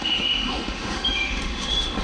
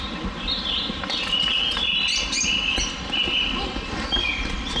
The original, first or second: second